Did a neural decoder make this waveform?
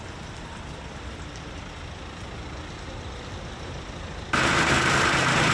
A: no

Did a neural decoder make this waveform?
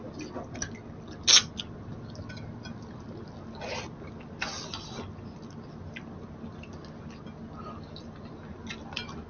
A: no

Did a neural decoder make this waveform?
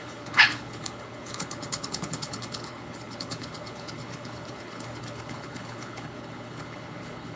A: yes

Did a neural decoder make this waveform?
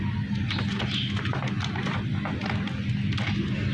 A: no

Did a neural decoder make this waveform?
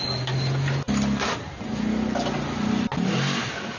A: no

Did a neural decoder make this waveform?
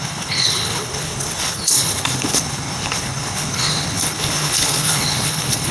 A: yes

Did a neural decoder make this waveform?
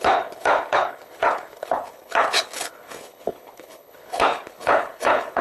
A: yes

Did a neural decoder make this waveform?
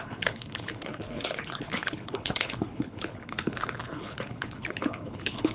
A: yes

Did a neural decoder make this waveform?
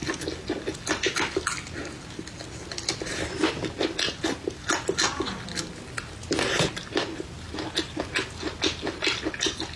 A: no